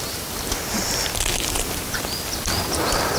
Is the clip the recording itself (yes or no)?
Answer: yes